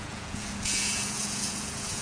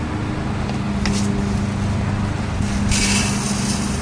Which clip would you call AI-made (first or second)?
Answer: first